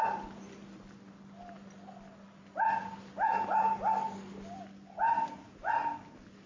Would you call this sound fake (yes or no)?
no